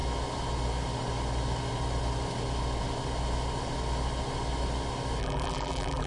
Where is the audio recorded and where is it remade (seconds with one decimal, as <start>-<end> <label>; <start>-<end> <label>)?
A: 0.0-5.2 recorded; 5.2-6.1 remade